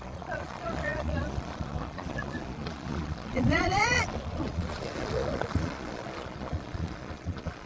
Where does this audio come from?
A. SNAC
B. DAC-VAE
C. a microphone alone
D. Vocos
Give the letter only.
D